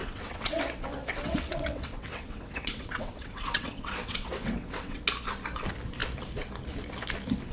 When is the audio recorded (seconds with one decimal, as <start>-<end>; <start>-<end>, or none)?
0.6-1.1; 5.0-7.5